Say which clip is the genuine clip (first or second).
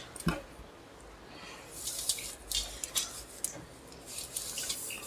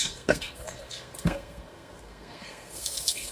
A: first